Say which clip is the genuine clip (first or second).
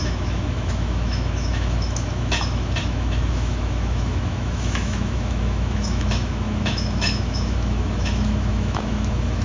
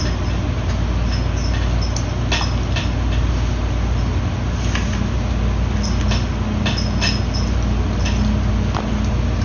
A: second